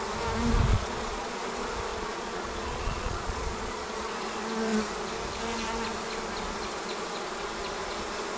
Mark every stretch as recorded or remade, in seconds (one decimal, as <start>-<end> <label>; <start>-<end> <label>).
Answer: 0.0-0.7 recorded; 0.7-1.3 remade; 1.3-1.9 recorded; 1.9-4.1 remade; 4.1-8.4 recorded